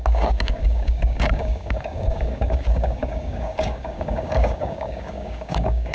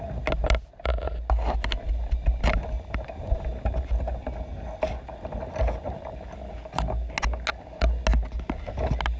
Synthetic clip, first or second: first